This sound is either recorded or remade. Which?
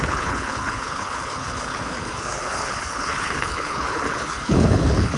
remade